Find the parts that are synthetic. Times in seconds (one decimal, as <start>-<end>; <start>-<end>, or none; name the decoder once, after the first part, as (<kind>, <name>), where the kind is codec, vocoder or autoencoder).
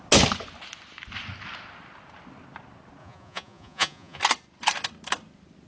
3.0-4.2 (vocoder, Vocos)